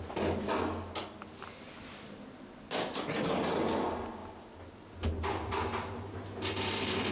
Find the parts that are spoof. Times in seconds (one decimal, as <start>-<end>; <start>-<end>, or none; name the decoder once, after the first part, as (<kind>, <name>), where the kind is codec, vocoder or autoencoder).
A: none